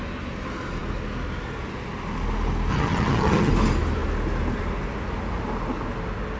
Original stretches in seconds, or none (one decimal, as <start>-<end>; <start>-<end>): 0.0-2.7; 3.5-6.4